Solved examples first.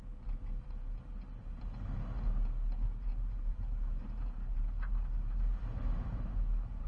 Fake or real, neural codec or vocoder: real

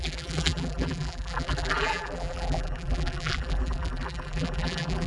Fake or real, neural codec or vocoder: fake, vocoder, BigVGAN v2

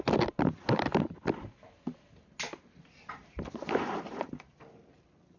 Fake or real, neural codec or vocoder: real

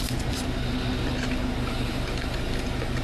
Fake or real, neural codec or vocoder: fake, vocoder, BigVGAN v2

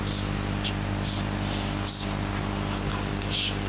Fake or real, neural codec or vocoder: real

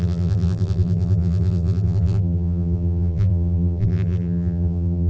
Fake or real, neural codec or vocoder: fake, vocoder, BigVGAN v2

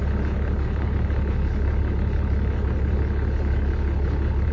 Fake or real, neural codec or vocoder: fake, codec, HILCodec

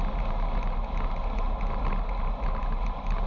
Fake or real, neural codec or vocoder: real